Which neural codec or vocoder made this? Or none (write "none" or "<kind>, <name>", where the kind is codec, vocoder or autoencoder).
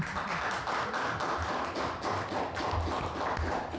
none